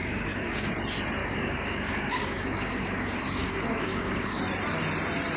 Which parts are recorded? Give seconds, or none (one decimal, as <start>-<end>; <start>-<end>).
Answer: 0.7-1.2; 4.4-5.4